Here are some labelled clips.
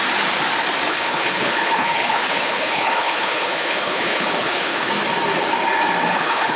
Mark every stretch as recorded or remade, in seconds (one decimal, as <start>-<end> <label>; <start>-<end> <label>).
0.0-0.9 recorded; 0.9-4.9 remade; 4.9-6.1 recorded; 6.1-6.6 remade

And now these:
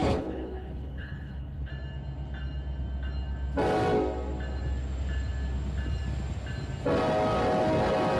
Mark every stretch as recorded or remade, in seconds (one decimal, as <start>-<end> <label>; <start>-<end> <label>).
0.0-1.7 remade; 1.7-8.2 recorded

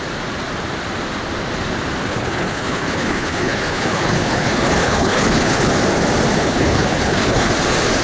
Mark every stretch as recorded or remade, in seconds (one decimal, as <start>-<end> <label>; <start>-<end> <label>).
0.0-2.1 recorded; 2.1-5.7 remade; 5.7-6.4 recorded; 6.4-7.5 remade; 7.5-8.0 recorded

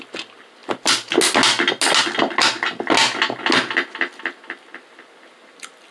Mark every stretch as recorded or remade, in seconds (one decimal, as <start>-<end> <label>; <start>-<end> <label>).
0.0-5.9 recorded